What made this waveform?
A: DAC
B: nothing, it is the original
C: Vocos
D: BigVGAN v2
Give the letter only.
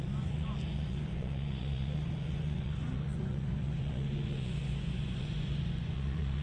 C